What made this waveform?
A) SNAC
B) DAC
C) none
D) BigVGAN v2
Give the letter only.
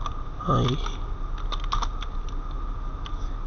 C